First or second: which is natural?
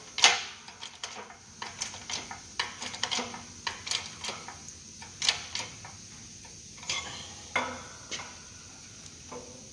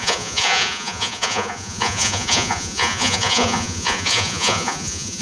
first